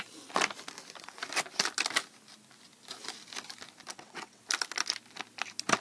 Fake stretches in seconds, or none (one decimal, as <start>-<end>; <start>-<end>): 3.9-4.4